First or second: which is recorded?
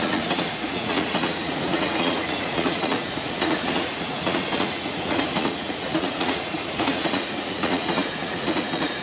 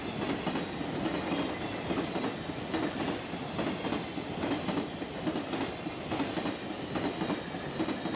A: second